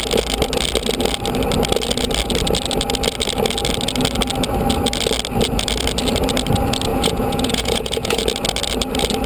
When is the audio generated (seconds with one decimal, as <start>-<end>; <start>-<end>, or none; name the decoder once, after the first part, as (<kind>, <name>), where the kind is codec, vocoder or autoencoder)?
6.9-8.2 (vocoder, Vocos)